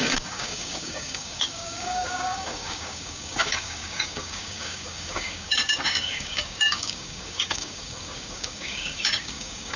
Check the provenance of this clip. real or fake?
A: fake